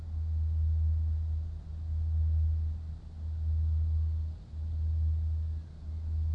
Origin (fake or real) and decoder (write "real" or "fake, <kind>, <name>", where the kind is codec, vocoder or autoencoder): real